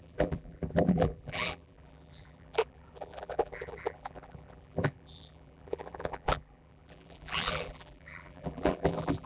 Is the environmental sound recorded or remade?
remade